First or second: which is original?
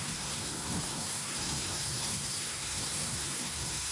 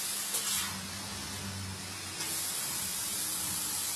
second